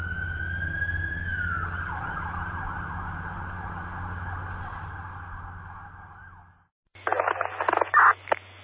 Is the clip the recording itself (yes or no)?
yes